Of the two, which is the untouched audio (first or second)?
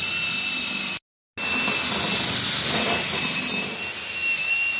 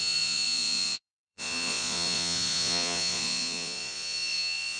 first